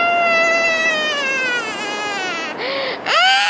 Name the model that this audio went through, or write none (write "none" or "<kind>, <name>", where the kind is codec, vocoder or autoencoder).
none